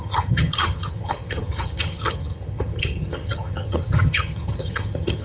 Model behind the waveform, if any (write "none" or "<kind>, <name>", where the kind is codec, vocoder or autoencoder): vocoder, HiFi-GAN